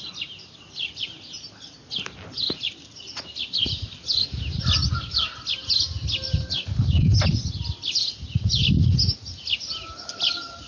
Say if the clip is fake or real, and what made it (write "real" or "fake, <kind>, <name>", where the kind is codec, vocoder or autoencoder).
real